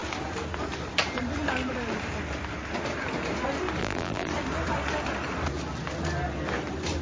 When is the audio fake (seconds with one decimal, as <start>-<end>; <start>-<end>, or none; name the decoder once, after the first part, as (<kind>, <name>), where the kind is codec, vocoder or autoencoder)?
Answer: 3.8-4.3 (vocoder, BigVGAN v2)